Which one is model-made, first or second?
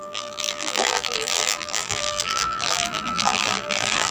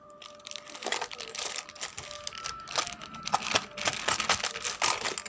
first